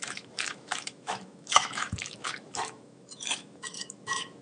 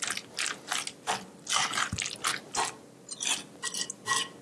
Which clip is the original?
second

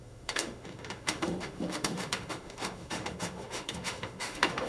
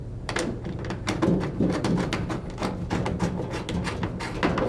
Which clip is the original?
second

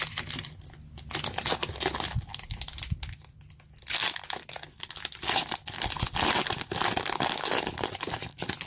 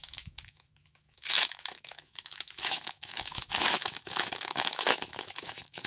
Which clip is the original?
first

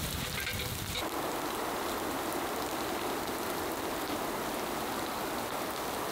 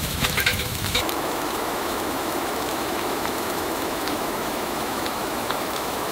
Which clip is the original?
first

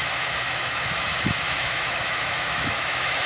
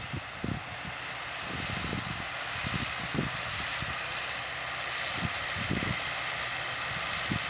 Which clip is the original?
second